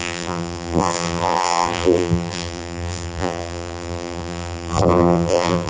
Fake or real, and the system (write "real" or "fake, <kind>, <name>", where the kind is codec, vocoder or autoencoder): fake, vocoder, BigVGAN v2